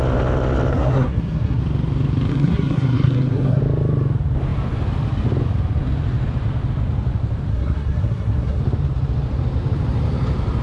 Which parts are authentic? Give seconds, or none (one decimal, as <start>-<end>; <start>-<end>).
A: 0.0-0.7; 1.6-2.3; 3.6-7.5; 8.6-10.6